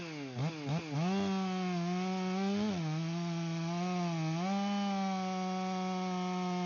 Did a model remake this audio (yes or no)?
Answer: no